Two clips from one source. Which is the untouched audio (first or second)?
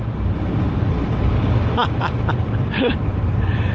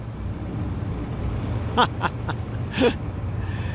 second